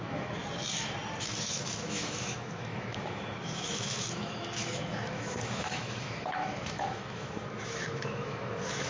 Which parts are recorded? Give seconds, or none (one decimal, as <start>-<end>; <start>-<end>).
0.4-1.2